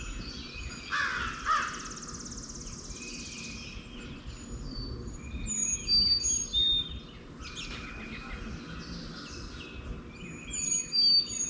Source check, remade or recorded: recorded